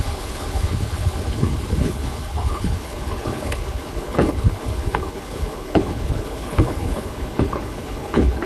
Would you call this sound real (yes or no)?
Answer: no